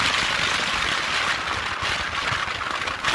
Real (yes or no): yes